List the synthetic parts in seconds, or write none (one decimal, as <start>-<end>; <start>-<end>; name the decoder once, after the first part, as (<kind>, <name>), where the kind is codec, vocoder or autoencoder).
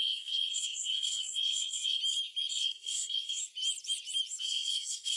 0.0-2.0 (codec, SNAC); 2.5-3.4; 4.4-5.2